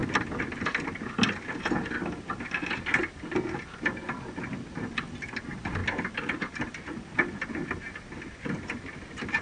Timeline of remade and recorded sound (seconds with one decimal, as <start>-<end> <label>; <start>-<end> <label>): 0.0-9.4 recorded